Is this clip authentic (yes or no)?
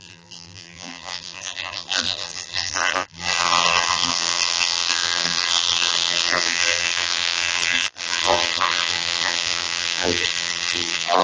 no